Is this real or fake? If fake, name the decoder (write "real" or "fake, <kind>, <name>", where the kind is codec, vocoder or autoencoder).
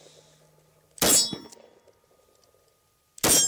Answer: real